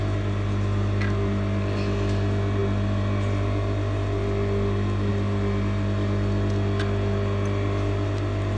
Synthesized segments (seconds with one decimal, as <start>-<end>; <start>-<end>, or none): none